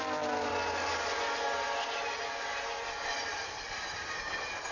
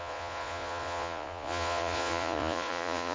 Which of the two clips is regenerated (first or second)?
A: second